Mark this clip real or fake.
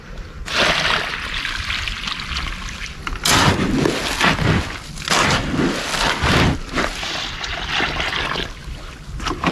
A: real